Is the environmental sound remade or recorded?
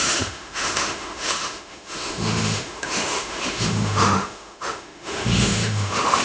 remade